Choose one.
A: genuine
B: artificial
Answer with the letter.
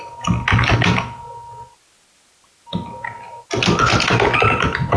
A